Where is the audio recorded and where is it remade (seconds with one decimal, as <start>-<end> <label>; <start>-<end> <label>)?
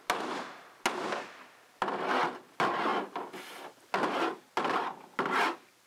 0.0-5.9 recorded